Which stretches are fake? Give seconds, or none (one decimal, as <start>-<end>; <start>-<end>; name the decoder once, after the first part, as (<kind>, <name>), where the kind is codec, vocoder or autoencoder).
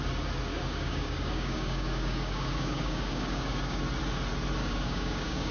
0.5-3.8 (codec, DAC); 4.6-5.5